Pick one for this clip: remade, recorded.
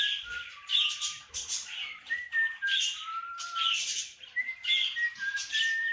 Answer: remade